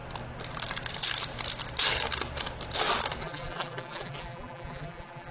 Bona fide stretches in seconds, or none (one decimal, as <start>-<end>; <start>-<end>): 0.0-3.2